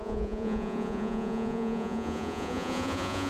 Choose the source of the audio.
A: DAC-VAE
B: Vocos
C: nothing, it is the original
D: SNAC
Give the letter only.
B